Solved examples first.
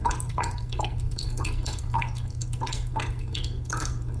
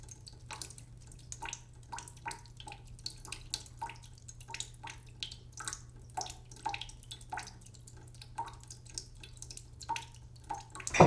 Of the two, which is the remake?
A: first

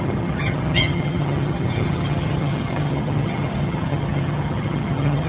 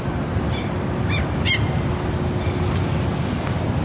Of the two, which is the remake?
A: first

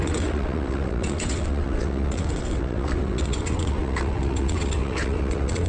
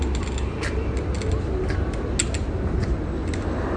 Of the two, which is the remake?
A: first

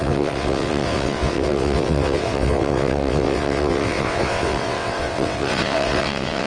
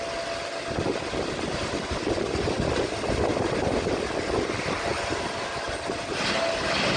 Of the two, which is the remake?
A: first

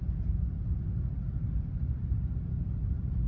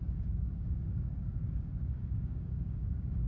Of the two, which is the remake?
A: second